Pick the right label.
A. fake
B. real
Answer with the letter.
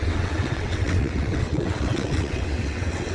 A